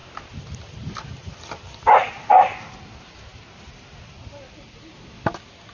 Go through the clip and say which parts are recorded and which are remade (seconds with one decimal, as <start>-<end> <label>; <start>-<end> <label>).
0.0-5.7 recorded